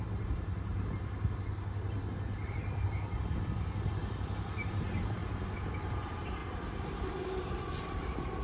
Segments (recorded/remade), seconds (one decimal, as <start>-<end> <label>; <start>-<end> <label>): 0.0-0.7 remade; 0.7-4.1 recorded; 4.1-5.2 remade; 5.2-5.8 recorded; 5.8-6.4 remade; 6.4-7.1 recorded; 7.1-8.4 remade